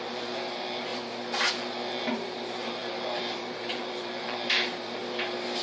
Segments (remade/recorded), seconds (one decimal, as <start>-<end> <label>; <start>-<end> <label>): 0.0-0.9 remade; 0.9-1.5 recorded; 1.5-5.0 remade; 5.0-5.6 recorded